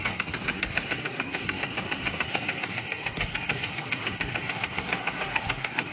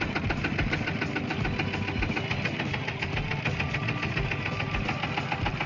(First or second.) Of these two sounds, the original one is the second